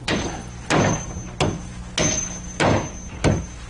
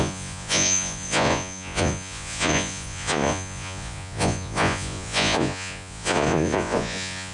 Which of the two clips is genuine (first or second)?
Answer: first